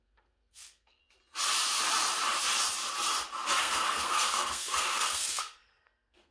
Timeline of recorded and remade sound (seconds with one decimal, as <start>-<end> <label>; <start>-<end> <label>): 0.0-1.0 remade; 1.0-3.6 recorded; 3.6-6.3 remade